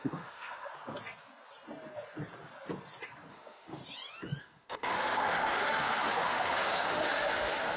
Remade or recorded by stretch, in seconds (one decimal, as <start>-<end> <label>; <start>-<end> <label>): 0.0-0.7 remade; 0.7-3.3 recorded; 3.3-3.8 remade; 3.8-4.4 recorded; 4.4-7.8 remade